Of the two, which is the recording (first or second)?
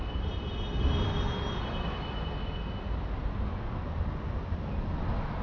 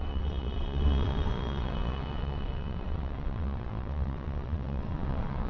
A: first